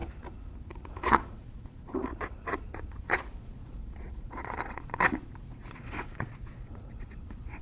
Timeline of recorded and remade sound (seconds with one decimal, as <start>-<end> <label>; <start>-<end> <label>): 0.0-0.9 recorded; 0.9-7.6 remade